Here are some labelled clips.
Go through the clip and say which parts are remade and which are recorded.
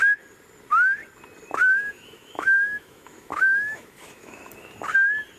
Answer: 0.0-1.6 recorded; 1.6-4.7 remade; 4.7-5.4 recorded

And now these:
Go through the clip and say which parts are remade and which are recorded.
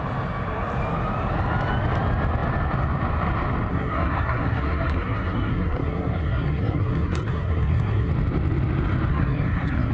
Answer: 0.0-3.7 recorded; 3.7-8.1 remade; 8.1-9.1 recorded; 9.1-9.9 remade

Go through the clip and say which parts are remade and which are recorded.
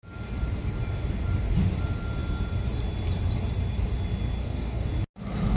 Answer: 0.0-4.4 recorded; 4.4-4.9 remade; 4.9-5.6 recorded